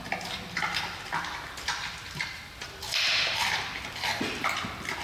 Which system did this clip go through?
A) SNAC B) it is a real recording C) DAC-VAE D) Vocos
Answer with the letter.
B